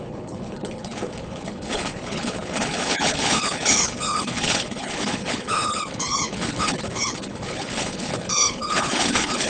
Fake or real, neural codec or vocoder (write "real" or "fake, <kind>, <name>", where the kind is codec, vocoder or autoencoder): fake, codec, HILCodec